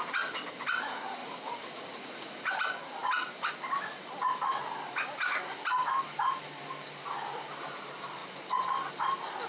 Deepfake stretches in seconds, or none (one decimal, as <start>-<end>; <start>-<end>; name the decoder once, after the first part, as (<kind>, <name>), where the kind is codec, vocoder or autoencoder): 1.2-2.5 (vocoder, Vocos)